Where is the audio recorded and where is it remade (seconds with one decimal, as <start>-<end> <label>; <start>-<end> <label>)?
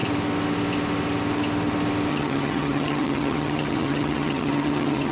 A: 0.0-2.1 recorded; 2.1-5.1 remade